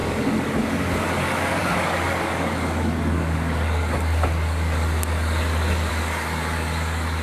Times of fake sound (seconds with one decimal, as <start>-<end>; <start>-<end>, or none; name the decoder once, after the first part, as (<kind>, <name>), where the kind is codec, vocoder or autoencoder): 0.0-7.2 (codec, DAC)